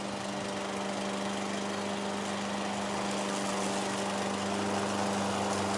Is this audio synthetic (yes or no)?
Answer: no